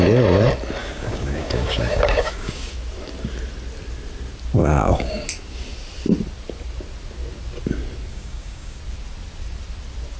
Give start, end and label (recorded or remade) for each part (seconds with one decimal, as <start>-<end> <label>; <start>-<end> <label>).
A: 0.0-0.8 recorded; 0.8-2.7 remade; 2.7-4.6 recorded; 4.6-5.3 remade; 5.3-8.1 recorded; 8.1-8.8 remade; 8.8-10.2 recorded